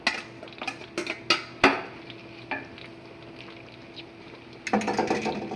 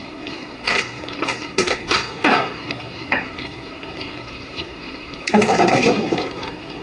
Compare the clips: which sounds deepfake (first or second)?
second